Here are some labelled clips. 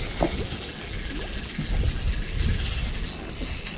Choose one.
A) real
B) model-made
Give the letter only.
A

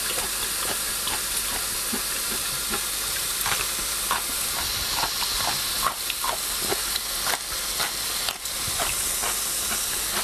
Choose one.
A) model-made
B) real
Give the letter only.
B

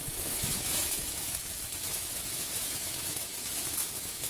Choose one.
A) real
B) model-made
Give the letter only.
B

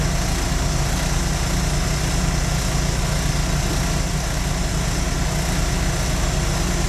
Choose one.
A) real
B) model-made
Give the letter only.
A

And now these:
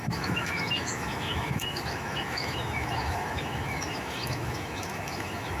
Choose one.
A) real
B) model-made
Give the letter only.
B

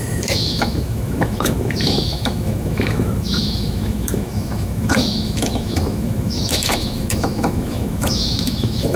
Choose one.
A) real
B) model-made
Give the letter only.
B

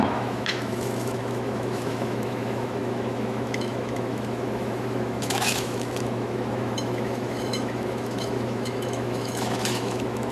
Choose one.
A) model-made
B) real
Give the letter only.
A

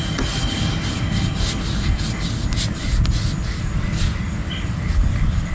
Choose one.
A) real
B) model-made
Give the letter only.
A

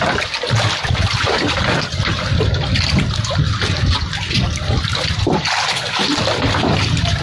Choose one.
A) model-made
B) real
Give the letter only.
B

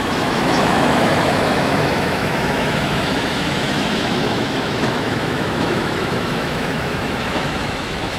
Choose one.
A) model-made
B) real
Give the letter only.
A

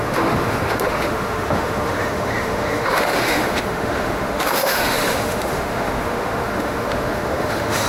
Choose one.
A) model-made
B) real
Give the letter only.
A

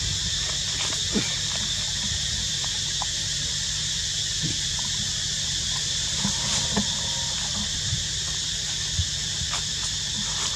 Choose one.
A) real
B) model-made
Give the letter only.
A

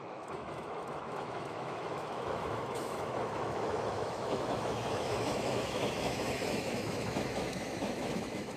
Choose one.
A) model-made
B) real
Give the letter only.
A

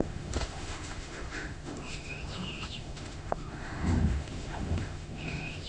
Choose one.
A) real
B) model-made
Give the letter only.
B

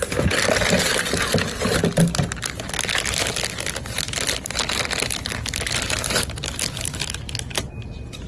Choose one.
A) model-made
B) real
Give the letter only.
B